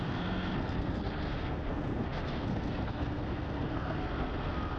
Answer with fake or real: fake